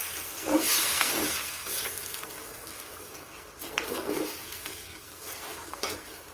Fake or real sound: fake